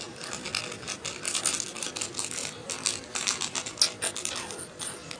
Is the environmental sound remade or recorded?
recorded